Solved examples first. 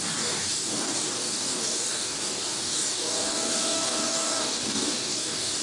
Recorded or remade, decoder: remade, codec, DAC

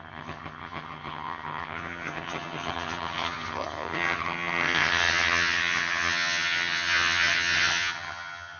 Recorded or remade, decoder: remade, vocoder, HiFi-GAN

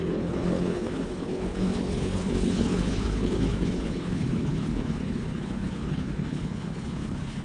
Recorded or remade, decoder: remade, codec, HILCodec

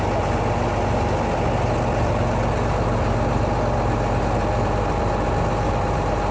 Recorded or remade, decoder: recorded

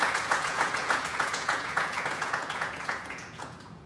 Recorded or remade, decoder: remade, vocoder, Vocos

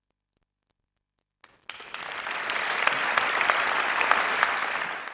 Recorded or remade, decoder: recorded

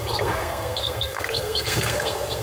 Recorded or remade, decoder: remade, codec, SNAC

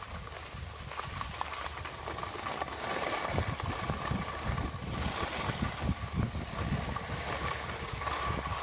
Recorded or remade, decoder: recorded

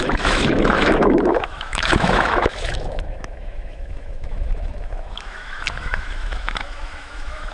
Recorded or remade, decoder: remade, autoencoder, DAC-VAE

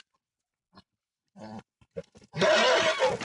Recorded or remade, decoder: recorded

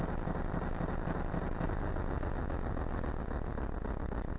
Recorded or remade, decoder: recorded